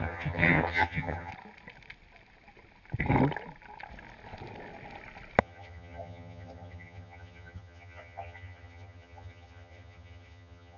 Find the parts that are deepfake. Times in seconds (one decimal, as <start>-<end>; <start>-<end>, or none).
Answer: 0.0-1.3; 5.4-10.8